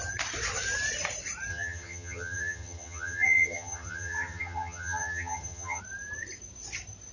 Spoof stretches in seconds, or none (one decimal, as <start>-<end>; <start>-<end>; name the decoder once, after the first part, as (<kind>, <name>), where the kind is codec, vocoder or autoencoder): 1.5-5.8 (vocoder, HiFi-GAN)